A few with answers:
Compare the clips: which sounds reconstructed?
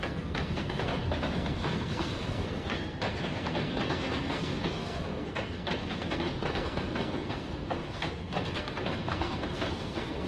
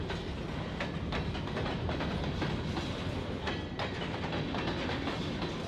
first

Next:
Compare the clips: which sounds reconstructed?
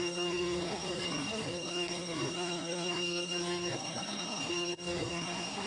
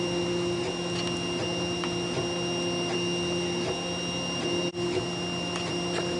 first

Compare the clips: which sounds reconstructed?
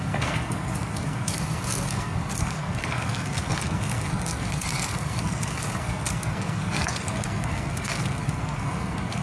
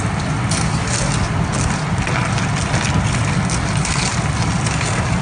first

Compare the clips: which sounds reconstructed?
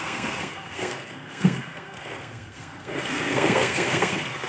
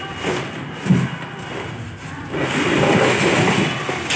first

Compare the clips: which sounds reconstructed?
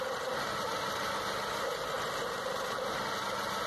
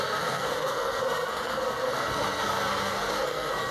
second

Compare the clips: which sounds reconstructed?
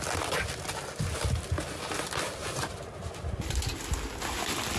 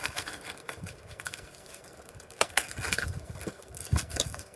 second